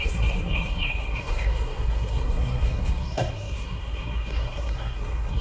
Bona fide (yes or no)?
no